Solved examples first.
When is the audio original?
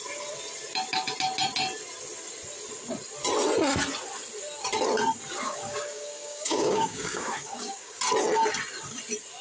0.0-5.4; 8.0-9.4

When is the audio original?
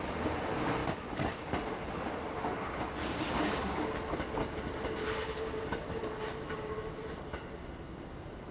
0.0-0.8; 1.4-3.0; 4.0-5.0; 6.2-8.5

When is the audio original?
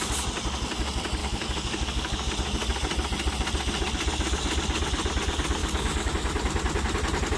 0.0-1.2; 2.3-5.6; 6.1-7.4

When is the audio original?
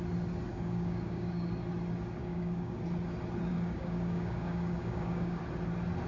0.0-0.5; 1.5-2.2; 2.8-3.5; 5.4-6.1